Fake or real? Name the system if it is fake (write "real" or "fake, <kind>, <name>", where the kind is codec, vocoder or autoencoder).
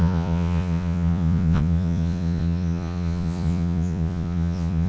fake, vocoder, Vocos